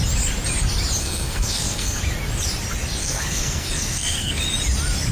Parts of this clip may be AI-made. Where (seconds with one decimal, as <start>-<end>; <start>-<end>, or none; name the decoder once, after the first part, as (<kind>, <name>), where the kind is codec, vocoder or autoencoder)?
1.0-2.0 (codec, SNAC); 3.0-4.4